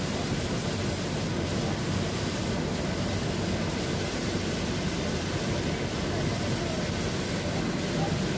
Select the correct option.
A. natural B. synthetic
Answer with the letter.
A